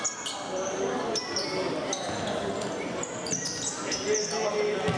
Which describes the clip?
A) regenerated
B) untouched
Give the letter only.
B